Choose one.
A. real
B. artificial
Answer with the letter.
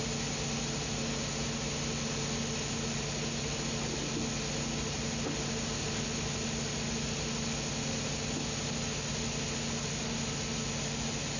A